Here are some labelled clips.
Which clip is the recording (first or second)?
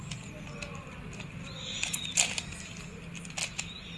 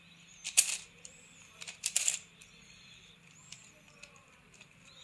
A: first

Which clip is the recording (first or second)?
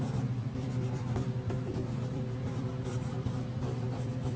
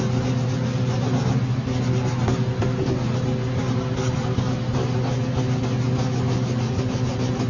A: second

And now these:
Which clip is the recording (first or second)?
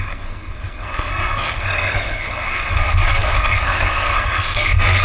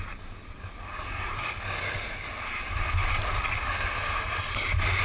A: second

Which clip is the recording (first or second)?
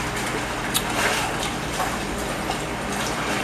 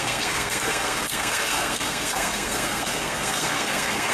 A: first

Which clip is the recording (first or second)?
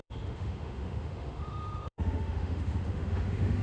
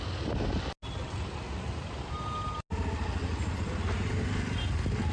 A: second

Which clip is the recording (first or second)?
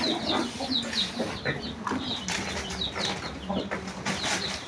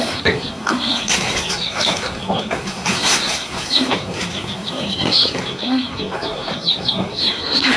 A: first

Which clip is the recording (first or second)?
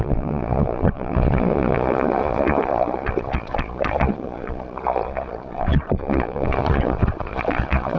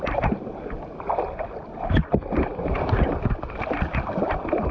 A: second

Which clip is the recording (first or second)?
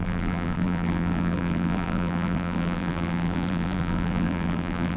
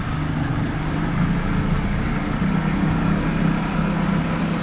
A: second